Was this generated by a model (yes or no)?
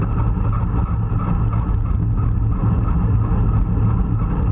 no